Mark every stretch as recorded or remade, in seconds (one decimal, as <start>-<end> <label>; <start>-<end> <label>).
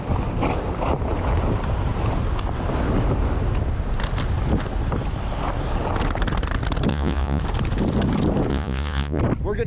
0.0-6.9 recorded; 6.9-7.4 remade; 7.4-8.5 recorded; 8.5-9.2 remade; 9.2-9.7 recorded